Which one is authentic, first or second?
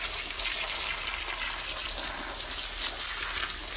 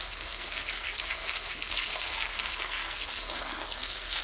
first